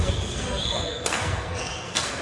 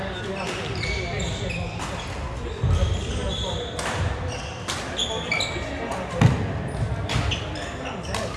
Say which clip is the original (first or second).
second